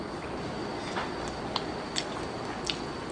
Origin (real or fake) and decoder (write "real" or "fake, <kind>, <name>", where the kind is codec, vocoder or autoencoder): real